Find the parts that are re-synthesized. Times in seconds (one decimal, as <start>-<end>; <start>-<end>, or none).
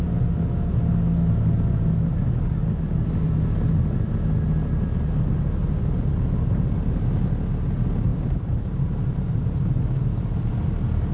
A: 8.1-10.5